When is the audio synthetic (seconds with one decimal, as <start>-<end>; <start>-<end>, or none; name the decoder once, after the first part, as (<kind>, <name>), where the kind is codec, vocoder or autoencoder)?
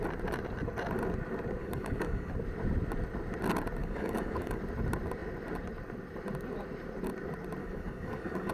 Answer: 1.6-2.3 (codec, DAC); 3.8-4.6; 7.6-8.5